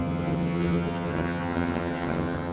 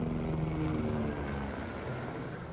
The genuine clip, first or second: second